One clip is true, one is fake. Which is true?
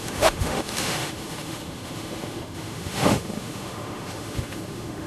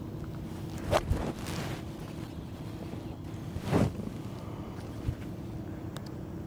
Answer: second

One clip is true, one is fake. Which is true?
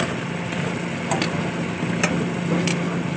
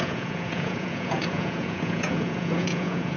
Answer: first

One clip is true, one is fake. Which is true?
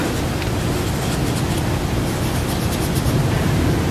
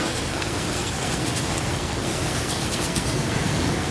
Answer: first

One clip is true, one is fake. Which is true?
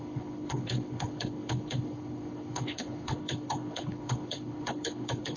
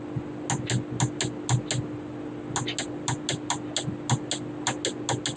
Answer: second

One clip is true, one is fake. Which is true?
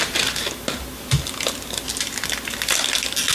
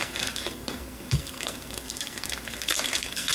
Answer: first